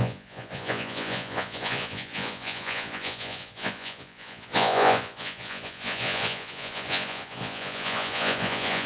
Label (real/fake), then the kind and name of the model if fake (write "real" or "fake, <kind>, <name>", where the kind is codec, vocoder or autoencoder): fake, vocoder, Vocos